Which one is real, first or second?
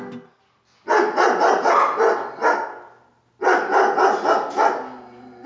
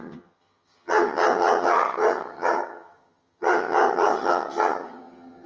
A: first